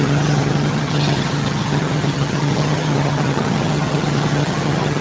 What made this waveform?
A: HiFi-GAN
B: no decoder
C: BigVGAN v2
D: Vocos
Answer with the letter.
A